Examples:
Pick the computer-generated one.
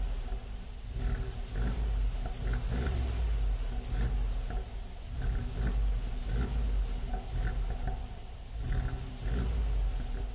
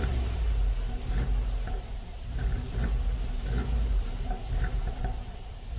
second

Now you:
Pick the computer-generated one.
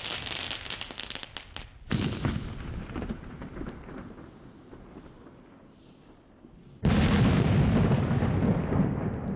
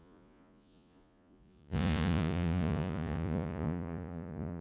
second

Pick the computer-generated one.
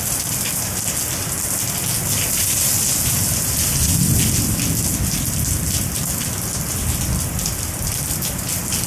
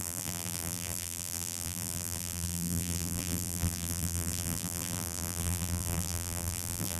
second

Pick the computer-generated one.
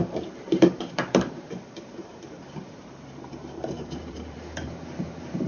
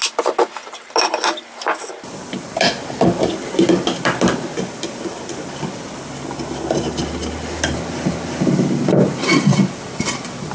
first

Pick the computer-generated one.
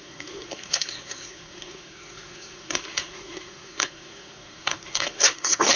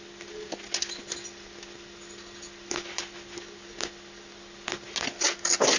first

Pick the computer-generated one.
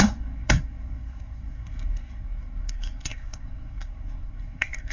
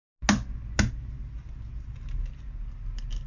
first